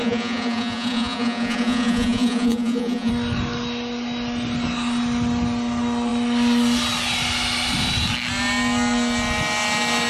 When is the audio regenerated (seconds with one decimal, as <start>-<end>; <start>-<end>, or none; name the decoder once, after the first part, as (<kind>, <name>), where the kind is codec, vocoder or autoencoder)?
0.0-3.1 (vocoder, Vocos)